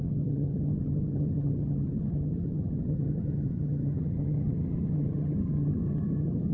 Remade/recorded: remade